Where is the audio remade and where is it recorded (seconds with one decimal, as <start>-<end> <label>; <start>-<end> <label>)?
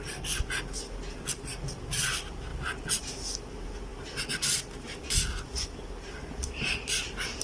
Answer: 0.0-7.4 recorded